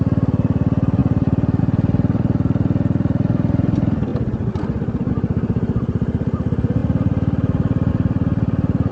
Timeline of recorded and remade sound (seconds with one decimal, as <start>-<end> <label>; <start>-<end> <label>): 0.0-8.9 recorded